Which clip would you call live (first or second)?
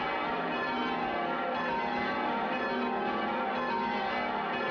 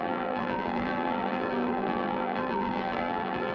first